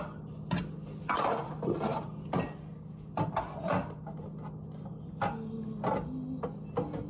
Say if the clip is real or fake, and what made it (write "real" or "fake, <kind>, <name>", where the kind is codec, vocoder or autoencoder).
real